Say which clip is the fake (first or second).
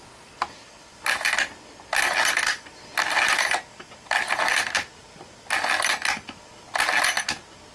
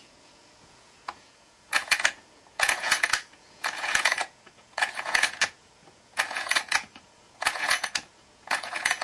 second